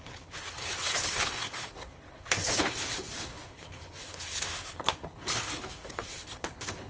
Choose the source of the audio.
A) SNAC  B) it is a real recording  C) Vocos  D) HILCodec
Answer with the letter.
D